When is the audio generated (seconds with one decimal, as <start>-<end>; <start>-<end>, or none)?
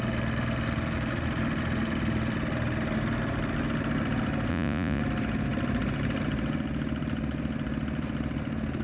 4.5-5.0